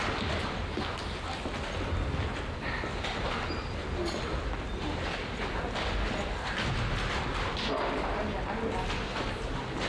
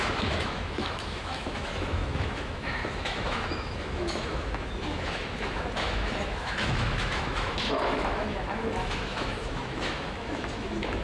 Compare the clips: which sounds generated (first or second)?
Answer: second